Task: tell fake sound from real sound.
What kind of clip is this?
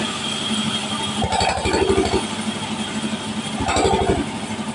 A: real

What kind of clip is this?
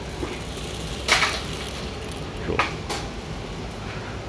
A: real